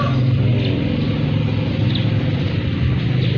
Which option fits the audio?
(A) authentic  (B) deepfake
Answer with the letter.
A